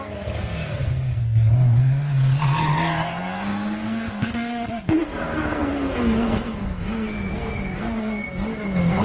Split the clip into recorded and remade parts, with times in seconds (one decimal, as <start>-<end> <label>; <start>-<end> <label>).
0.0-9.0 remade